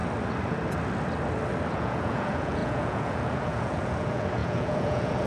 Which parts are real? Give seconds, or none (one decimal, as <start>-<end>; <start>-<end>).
0.0-1.7